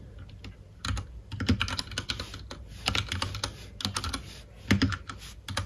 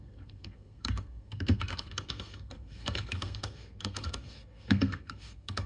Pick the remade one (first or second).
second